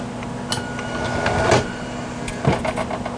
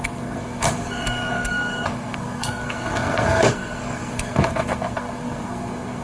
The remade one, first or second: second